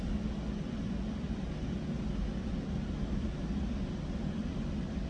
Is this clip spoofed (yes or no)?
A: no